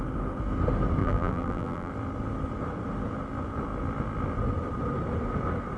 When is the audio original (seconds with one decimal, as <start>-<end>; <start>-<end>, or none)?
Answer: 0.0-1.0; 1.9-5.8